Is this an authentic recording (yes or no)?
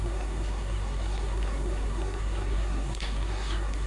no